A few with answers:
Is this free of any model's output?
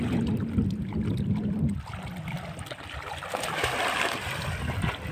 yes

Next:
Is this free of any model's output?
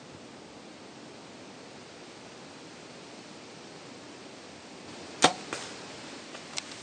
yes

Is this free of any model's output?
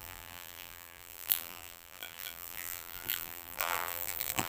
no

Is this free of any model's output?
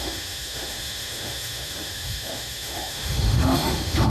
no